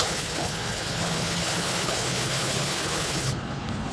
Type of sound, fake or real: fake